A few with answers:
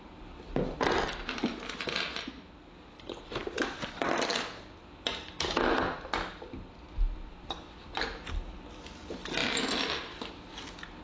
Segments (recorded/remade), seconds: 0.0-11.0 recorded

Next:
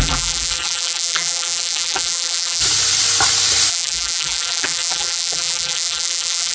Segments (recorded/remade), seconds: 0.0-2.6 remade; 2.6-3.7 recorded; 3.7-6.5 remade